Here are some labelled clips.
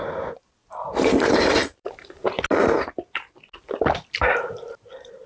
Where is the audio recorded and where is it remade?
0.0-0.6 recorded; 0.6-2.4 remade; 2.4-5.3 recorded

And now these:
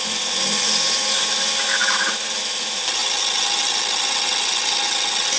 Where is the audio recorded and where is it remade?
0.0-5.4 recorded

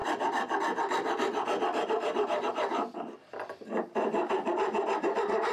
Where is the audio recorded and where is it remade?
0.0-3.3 remade; 3.3-5.5 recorded